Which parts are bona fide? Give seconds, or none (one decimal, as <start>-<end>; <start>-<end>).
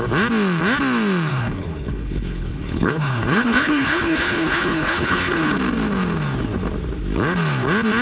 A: 0.0-1.3; 5.6-8.0